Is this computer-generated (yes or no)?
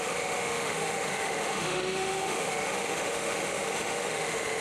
yes